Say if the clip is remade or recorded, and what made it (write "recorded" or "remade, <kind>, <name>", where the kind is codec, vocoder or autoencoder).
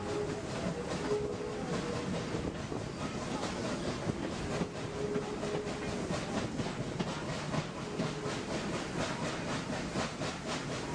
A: recorded